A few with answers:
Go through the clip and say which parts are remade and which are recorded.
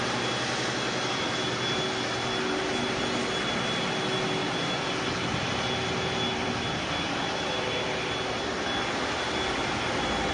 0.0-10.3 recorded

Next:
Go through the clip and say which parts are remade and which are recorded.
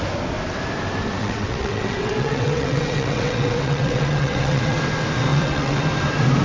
0.0-1.2 recorded; 1.2-4.8 remade; 4.8-5.3 recorded; 5.3-5.8 remade; 5.8-6.4 recorded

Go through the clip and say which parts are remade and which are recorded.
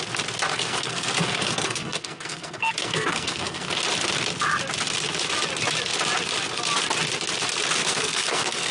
0.0-0.5 recorded; 0.5-3.7 remade; 3.7-7.8 recorded; 7.8-8.7 remade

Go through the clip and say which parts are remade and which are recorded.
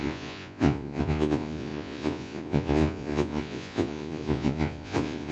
0.0-5.3 remade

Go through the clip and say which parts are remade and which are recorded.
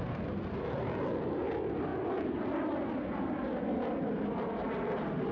0.0-5.3 recorded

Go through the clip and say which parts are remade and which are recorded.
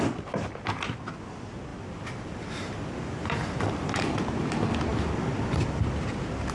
0.0-1.7 recorded; 1.7-4.2 remade; 4.2-4.9 recorded; 4.9-5.9 remade; 5.9-6.5 recorded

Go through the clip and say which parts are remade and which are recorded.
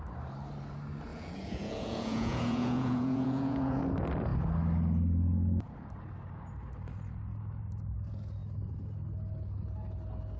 0.0-1.1 recorded; 1.1-3.8 remade; 3.8-10.4 recorded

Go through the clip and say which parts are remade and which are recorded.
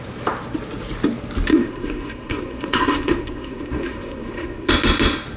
0.0-1.5 recorded; 1.5-4.7 remade; 4.7-5.4 recorded